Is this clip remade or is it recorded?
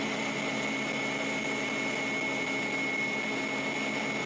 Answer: recorded